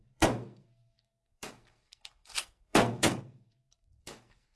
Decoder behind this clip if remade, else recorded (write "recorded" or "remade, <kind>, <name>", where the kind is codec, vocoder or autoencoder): remade, codec, SNAC